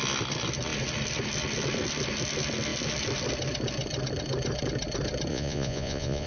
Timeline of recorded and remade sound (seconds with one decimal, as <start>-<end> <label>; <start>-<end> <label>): 0.0-5.3 recorded; 5.3-6.3 remade